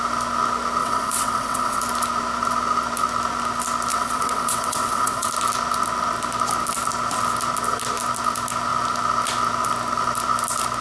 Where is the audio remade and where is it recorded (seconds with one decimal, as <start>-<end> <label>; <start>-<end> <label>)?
0.0-0.8 recorded; 0.8-1.8 remade; 1.8-3.9 recorded; 3.9-5.3 remade; 5.3-10.8 recorded